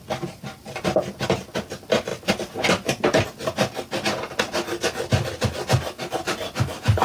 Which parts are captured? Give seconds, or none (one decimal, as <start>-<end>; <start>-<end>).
0.0-7.0

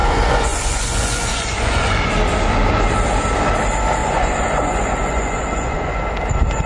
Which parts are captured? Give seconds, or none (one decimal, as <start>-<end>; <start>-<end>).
2.1-4.0; 5.9-6.7

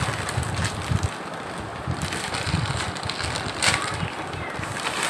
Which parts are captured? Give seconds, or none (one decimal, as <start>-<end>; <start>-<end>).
0.0-5.1